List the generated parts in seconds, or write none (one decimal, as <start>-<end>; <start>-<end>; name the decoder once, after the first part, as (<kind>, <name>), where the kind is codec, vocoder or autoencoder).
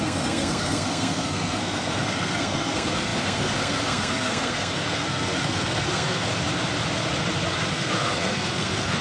0.0-6.3 (codec, SNAC); 7.7-9.0